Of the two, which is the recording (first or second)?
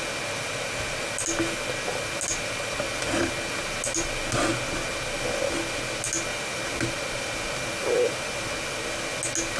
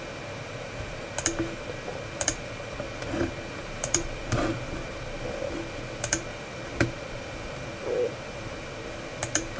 first